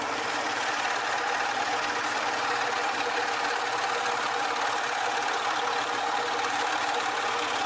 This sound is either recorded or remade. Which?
recorded